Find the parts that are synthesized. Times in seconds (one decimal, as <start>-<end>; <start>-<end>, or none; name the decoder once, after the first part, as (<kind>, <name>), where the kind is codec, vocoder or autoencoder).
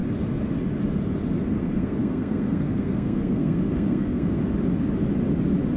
1.6-4.4 (codec, SNAC)